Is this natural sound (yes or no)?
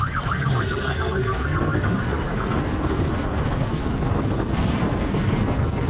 no